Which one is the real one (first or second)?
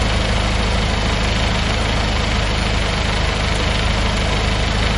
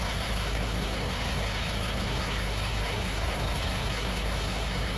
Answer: first